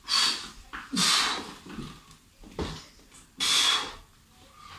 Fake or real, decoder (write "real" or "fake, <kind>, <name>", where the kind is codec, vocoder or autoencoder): real